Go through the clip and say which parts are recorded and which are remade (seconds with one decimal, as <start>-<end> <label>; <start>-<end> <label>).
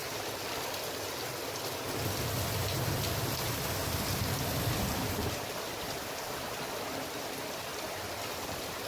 0.0-3.8 recorded; 3.8-5.4 remade; 5.4-8.9 recorded